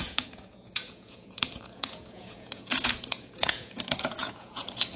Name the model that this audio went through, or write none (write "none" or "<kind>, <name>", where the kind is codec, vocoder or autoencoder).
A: vocoder, Vocos